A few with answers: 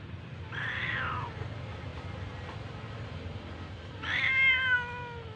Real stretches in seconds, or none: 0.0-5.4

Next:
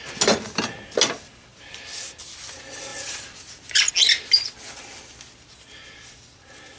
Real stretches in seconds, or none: 0.0-1.5; 2.2-2.9; 3.9-6.8

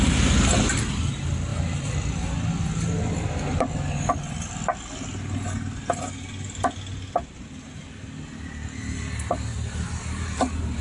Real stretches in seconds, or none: 0.0-7.2; 7.9-9.5